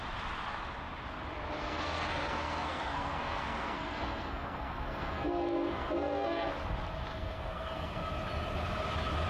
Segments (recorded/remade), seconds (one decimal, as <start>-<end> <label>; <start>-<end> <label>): 0.0-1.6 recorded; 1.6-6.5 remade; 6.5-7.1 recorded; 7.1-8.1 remade; 8.1-9.3 recorded